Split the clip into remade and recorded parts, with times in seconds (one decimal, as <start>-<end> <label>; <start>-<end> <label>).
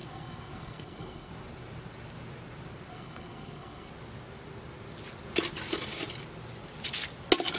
0.0-1.3 remade; 1.3-2.9 recorded; 2.9-3.9 remade; 3.9-7.6 recorded